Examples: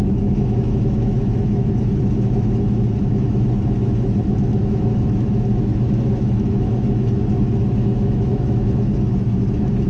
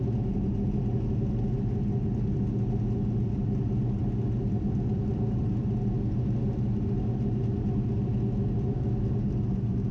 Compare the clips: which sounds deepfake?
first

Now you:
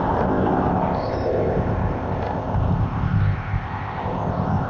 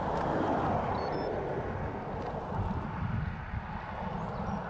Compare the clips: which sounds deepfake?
first